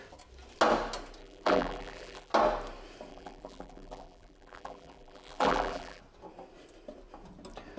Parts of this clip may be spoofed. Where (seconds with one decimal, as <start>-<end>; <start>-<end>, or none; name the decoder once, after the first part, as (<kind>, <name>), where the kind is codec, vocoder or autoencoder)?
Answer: 1.2-2.3 (vocoder, BigVGAN v2); 3.1-6.0